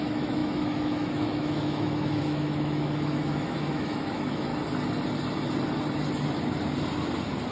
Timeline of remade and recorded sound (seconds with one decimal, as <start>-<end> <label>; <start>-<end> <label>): 0.0-4.5 remade; 4.5-7.5 recorded